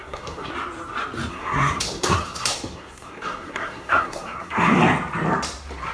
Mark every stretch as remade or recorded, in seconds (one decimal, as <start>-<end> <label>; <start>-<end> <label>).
0.0-0.5 remade; 0.5-1.3 recorded; 1.3-4.8 remade; 4.8-5.9 recorded